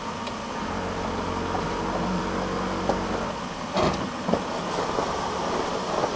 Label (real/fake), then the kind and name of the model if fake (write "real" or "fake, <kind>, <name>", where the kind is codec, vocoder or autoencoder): real